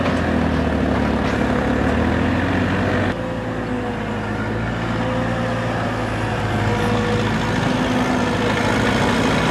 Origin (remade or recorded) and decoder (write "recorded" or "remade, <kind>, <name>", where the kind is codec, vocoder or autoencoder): recorded